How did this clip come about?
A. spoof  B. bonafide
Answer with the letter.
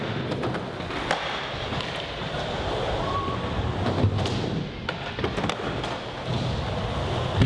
B